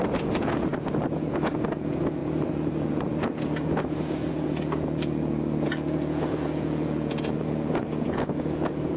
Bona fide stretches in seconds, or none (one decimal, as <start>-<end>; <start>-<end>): none